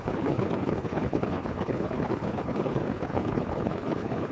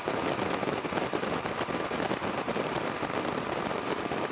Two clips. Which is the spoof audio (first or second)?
first